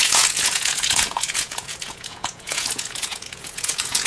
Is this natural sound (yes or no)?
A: no